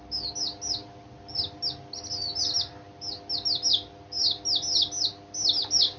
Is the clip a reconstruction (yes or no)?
no